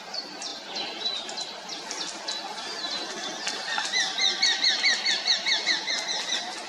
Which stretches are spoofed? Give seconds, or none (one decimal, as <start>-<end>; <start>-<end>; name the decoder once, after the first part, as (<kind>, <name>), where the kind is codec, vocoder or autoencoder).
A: 0.5-1.8 (vocoder, BigVGAN v2)